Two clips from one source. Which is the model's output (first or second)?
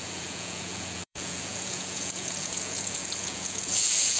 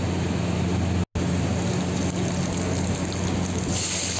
first